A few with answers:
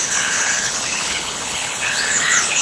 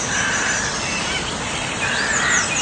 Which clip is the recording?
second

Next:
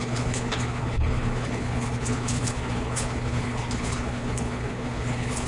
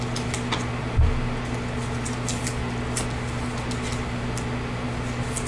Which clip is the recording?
second